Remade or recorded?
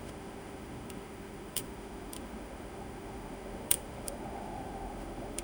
remade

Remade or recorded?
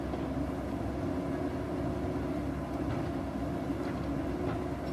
recorded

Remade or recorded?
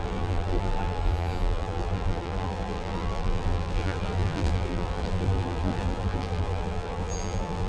remade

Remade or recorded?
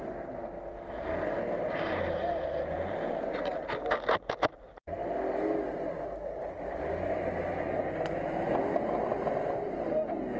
recorded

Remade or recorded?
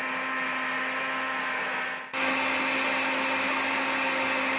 recorded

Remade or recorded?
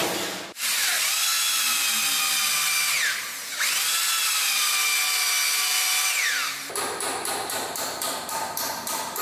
recorded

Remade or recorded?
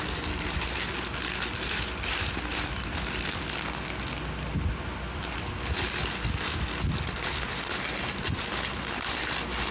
recorded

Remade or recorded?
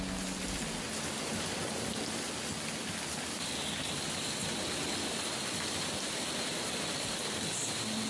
recorded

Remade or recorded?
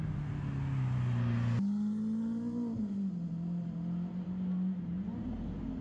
recorded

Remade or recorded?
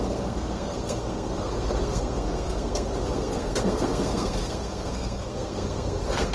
remade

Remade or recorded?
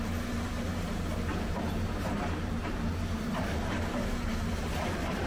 remade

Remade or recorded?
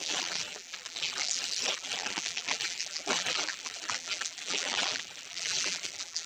remade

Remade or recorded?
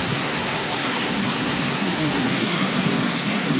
remade